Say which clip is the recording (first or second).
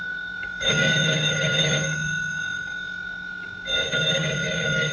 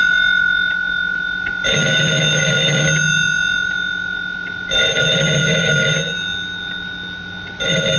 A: second